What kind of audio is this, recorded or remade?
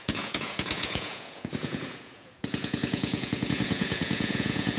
remade